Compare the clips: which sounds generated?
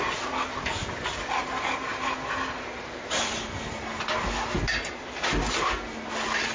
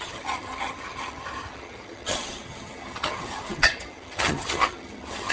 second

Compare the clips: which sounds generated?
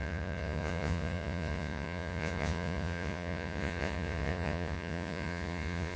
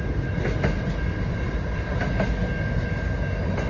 first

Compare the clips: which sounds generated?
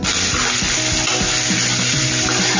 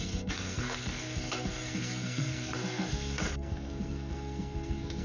second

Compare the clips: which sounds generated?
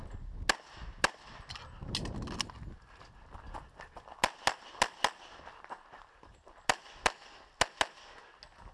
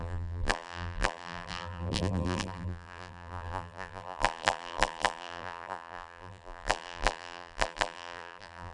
second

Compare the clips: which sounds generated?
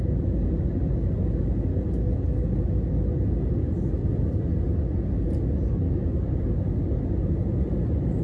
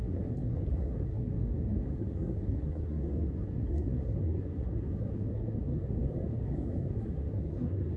second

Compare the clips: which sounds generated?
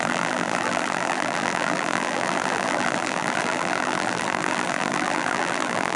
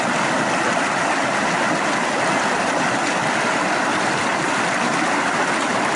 first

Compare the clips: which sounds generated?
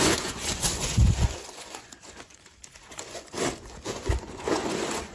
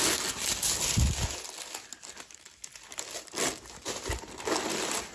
first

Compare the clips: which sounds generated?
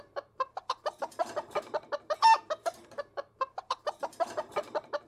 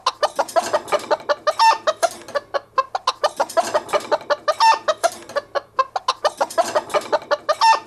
first